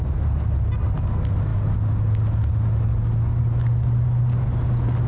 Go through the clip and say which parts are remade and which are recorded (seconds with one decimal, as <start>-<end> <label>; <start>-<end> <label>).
0.0-5.1 recorded